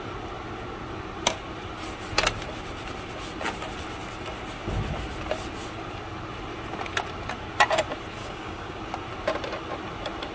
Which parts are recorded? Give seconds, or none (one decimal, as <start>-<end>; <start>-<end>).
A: 0.0-8.2; 8.8-10.3

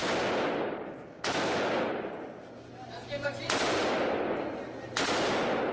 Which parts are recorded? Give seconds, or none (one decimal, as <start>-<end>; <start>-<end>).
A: 0.0-5.7

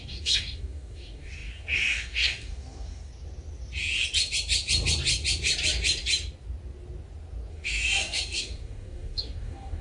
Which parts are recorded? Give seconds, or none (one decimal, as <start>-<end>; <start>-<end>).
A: 3.1-7.5

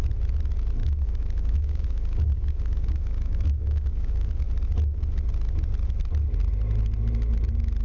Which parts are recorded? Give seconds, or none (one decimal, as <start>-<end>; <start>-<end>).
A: 0.0-0.8; 4.3-7.8

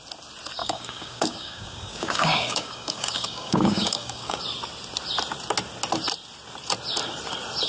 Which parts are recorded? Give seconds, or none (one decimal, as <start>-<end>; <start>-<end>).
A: 0.0-0.6; 4.4-7.7

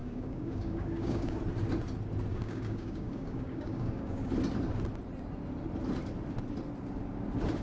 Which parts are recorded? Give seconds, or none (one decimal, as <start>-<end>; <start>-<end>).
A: 1.4-2.3; 4.3-7.6